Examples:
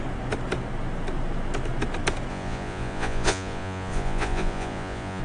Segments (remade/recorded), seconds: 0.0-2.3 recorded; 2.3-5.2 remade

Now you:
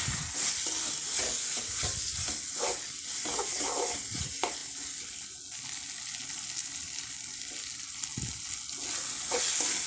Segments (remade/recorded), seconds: 0.0-9.9 recorded

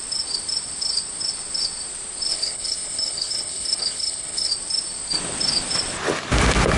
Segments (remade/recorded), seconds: 0.0-2.3 recorded; 2.3-4.5 remade; 4.5-6.8 recorded